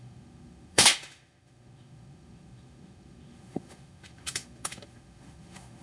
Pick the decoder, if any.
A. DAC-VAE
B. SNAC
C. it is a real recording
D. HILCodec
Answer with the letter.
A